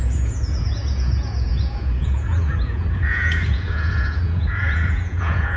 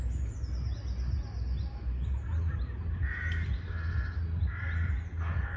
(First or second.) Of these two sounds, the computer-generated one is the first